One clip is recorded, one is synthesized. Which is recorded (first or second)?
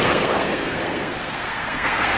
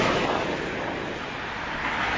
second